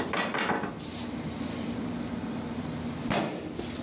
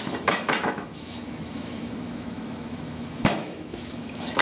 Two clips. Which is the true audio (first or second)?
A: first